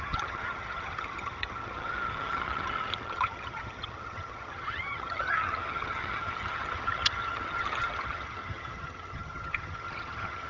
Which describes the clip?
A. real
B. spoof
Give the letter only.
B